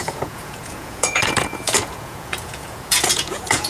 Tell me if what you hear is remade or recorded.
remade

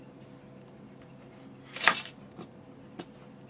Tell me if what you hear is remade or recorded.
recorded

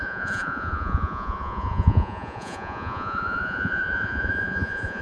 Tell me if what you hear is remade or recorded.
remade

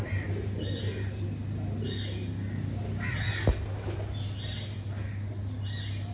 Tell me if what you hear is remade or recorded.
recorded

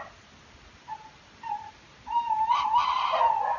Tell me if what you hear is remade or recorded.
recorded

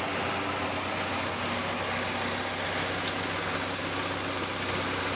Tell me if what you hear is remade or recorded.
recorded